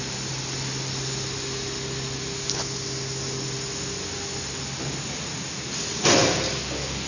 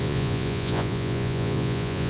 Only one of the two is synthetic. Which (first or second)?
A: second